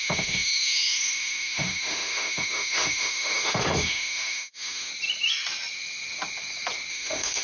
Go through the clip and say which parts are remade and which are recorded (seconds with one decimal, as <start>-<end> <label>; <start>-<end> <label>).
0.0-4.9 remade; 4.9-6.9 recorded; 6.9-7.4 remade